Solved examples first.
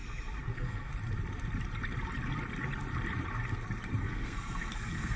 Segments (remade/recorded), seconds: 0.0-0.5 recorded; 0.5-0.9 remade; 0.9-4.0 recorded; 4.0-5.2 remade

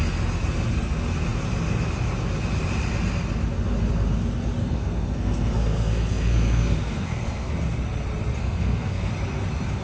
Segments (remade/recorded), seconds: 0.0-4.6 recorded; 4.6-7.5 remade; 7.5-8.4 recorded; 8.4-9.1 remade; 9.1-9.8 recorded

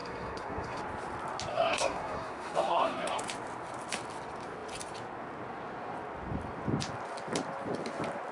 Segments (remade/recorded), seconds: 0.0-0.8 remade; 0.8-1.5 recorded; 1.5-3.2 remade; 3.2-8.3 recorded

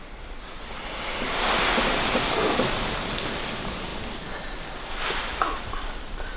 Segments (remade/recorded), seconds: 0.0-6.4 recorded

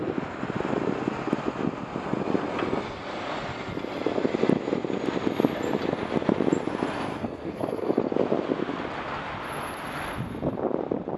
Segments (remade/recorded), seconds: 0.0-7.1 recorded; 7.1-8.0 remade; 8.0-11.2 recorded

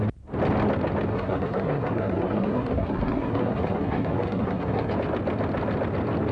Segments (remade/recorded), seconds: 0.0-1.1 recorded; 1.1-4.9 remade; 4.9-6.3 recorded

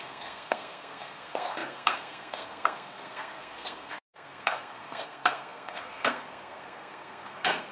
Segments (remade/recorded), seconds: 0.0-7.7 remade

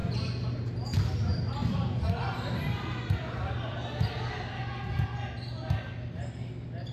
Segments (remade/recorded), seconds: 0.0-6.9 recorded